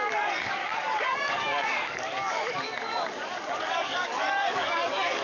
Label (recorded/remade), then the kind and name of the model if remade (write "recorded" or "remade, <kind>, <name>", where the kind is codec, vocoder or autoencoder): remade, codec, DAC